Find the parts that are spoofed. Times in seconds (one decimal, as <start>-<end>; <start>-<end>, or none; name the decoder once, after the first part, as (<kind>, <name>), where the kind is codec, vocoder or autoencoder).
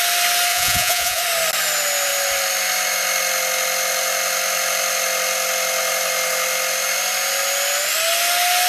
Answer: 0.5-1.2 (vocoder, Vocos)